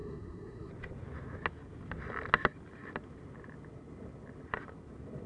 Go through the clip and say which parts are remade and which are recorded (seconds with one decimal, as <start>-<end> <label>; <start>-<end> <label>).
0.0-0.7 remade; 0.7-5.3 recorded